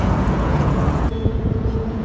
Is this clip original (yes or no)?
no